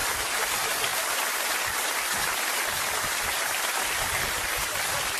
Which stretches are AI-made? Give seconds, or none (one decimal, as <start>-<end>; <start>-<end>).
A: 0.9-4.0